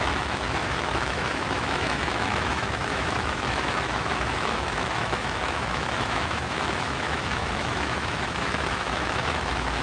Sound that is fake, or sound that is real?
fake